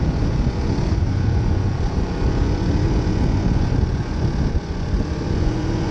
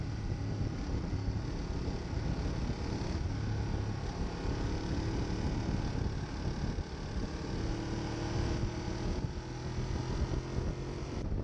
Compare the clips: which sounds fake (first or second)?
first